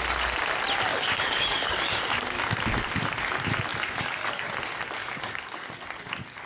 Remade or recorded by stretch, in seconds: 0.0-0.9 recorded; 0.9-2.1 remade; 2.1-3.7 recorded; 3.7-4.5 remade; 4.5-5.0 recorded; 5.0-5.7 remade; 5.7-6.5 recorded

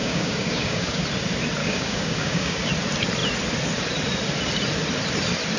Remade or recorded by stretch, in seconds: 0.0-1.0 remade; 1.0-1.6 recorded; 1.6-2.7 remade; 2.7-5.6 recorded